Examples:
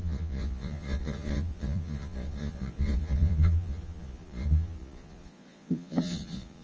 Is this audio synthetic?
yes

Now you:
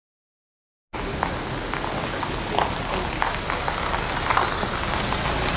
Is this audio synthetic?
no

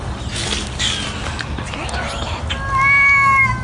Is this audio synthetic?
no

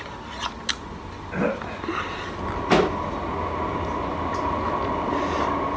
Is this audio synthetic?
no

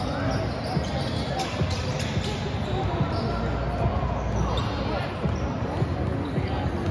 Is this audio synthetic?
no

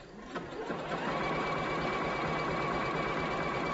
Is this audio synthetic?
no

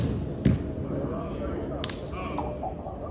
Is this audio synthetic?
no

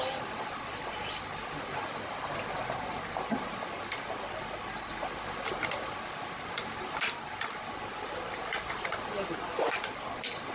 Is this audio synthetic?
no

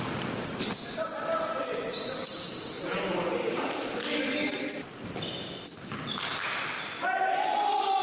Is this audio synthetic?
no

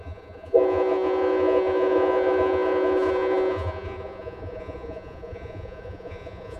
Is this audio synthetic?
yes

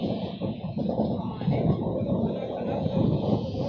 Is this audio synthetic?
yes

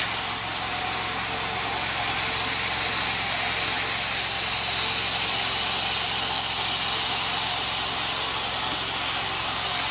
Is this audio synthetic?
no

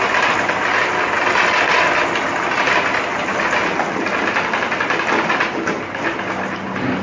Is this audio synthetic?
no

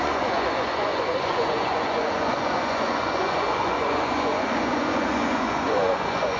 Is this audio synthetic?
yes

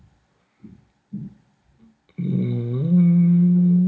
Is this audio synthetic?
no